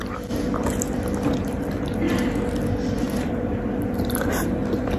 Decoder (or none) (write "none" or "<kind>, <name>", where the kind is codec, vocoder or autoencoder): none